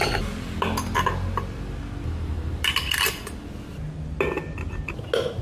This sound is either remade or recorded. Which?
recorded